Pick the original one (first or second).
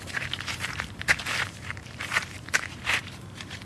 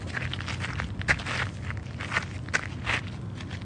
second